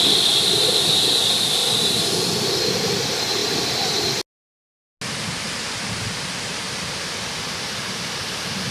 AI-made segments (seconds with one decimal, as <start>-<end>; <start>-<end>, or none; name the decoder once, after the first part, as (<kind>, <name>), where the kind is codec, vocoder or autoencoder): none